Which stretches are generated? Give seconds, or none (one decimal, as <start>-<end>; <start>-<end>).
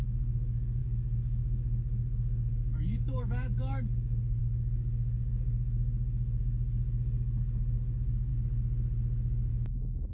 0.0-8.3; 9.5-10.1